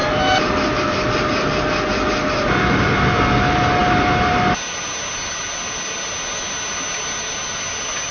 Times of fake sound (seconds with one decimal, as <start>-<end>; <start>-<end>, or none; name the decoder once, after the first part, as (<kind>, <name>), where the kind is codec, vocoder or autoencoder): none